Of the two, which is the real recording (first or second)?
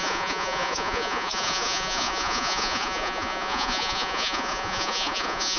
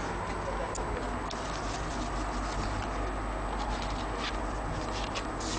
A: second